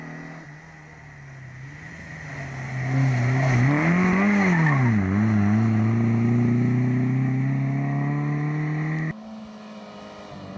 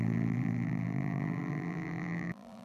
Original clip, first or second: first